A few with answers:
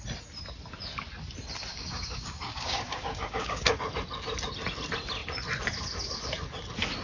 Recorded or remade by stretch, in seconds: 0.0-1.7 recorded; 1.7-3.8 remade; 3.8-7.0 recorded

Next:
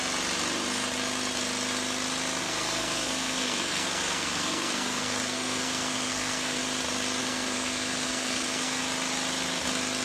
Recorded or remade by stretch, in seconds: 0.0-2.4 recorded; 2.4-6.6 remade; 6.6-7.2 recorded; 7.2-8.8 remade; 8.8-10.0 recorded

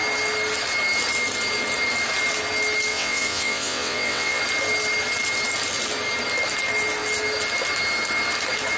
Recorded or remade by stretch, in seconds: 0.0-2.9 recorded; 2.9-4.4 remade; 4.4-8.8 recorded

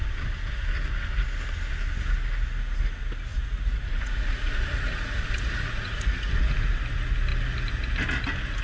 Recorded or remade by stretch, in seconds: 0.0-3.3 recorded; 3.3-6.3 remade; 6.3-8.6 recorded

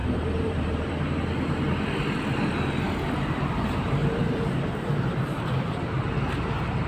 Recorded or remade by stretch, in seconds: 0.0-0.9 remade; 0.9-4.0 recorded; 4.0-5.1 remade; 5.1-6.9 recorded